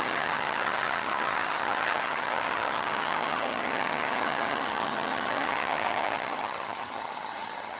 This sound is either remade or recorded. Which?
remade